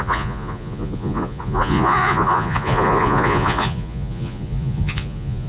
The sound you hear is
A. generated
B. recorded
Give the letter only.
A